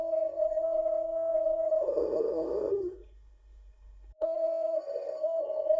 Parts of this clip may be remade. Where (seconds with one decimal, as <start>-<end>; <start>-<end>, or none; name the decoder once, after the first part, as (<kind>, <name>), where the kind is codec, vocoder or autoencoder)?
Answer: 0.0-5.8 (codec, SNAC)